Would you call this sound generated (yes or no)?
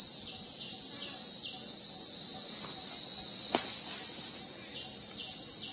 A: no